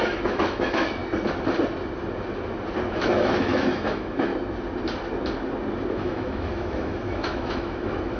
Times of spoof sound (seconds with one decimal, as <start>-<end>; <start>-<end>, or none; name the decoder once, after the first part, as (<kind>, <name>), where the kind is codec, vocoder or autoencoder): 0.0-1.0 (autoencoder, DAC-VAE); 2.9-4.3; 5.9-8.2